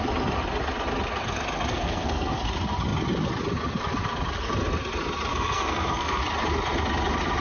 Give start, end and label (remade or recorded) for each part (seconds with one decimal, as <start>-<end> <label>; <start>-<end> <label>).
0.0-1.7 recorded; 1.7-2.4 remade; 2.4-5.3 recorded; 5.3-6.2 remade; 6.2-7.4 recorded